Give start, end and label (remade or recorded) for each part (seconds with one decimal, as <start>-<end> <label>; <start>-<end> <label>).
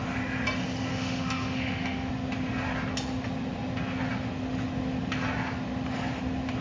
0.0-0.9 recorded; 0.9-2.1 remade; 2.1-6.6 recorded